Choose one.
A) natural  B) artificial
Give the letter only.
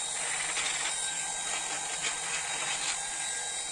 A